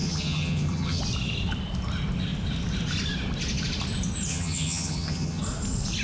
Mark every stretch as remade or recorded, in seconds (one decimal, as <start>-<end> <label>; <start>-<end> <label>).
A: 0.0-1.0 remade; 1.0-4.3 recorded; 4.3-5.4 remade; 5.4-6.0 recorded